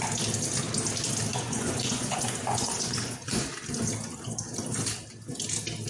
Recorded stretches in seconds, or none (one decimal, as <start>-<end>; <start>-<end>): 0.0-1.3; 3.4-5.9